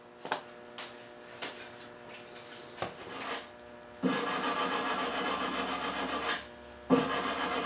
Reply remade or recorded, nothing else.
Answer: recorded